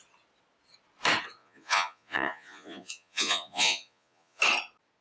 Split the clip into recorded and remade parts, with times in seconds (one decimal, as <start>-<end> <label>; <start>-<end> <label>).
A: 0.0-1.4 recorded; 1.4-4.4 remade; 4.4-5.0 recorded